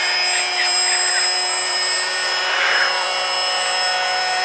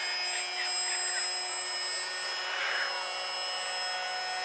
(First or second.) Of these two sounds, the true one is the second